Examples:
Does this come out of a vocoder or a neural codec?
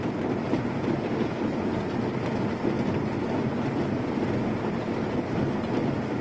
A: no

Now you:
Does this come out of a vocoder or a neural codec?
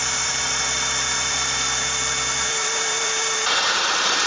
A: yes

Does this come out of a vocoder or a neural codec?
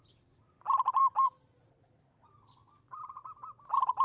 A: yes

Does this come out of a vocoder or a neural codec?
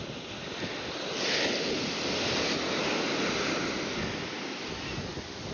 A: no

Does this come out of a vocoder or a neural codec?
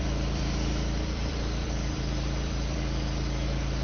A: yes